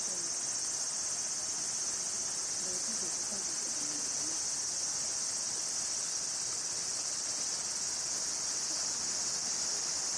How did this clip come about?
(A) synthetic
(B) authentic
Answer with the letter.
B